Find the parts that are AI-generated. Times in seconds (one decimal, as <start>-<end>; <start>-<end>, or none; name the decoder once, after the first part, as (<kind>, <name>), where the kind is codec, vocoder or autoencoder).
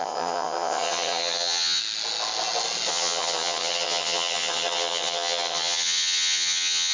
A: 0.0-1.8 (vocoder, HiFi-GAN); 2.9-6.9